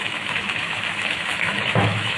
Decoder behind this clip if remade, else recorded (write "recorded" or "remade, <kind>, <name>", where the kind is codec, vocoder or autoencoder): remade, autoencoder, DAC-VAE